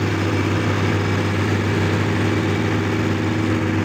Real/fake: real